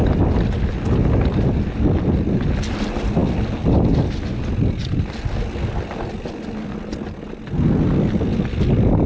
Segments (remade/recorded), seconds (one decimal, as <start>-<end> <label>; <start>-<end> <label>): 0.0-9.1 recorded